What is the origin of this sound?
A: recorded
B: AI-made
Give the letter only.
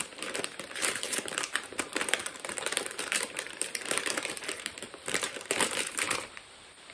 B